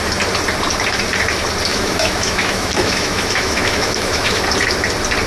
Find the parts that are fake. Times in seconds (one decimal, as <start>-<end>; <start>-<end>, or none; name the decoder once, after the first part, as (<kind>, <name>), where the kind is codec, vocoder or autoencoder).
1.7-4.4 (autoencoder, DAC-VAE)